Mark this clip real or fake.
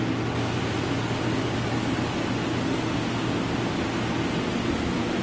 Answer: real